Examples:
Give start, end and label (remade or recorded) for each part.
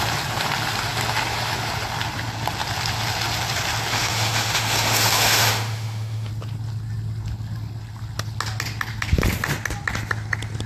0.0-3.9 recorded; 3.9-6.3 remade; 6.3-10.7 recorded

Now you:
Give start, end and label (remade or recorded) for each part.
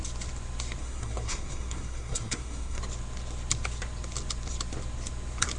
0.0-0.8 recorded; 0.8-2.8 remade; 2.8-5.6 recorded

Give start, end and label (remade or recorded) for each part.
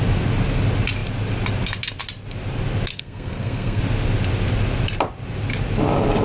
0.0-2.9 recorded; 2.9-3.8 remade; 3.8-6.2 recorded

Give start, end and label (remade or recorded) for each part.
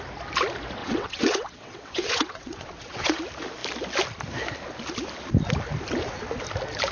0.0-0.8 recorded; 0.8-3.2 remade; 3.2-6.9 recorded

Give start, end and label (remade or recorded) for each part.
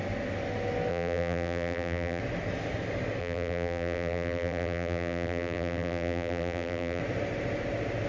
0.0-0.9 recorded; 0.9-2.2 remade; 2.2-3.2 recorded; 3.2-7.0 remade; 7.0-8.1 recorded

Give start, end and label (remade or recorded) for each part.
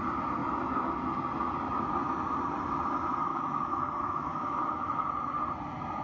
0.0-3.3 recorded; 3.3-5.1 remade; 5.1-6.0 recorded